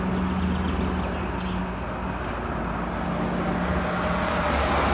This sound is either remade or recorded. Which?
recorded